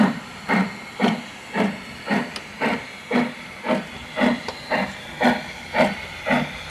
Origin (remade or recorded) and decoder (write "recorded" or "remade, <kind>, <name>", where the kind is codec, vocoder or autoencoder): recorded